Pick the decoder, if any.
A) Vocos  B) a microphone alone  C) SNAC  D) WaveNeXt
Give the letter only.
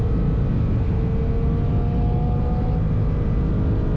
B